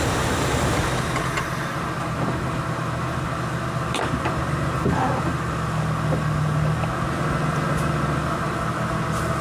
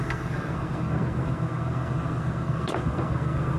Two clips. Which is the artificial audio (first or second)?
second